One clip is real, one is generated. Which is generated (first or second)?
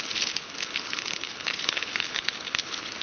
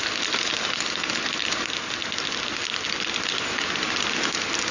first